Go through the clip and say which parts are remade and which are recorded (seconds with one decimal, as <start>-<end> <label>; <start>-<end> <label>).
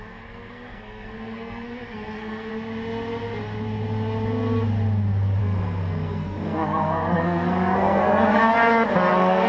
0.0-2.5 remade; 2.5-5.4 recorded; 5.4-8.4 remade; 8.4-9.1 recorded; 9.1-9.5 remade